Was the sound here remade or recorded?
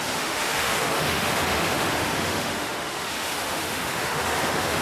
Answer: remade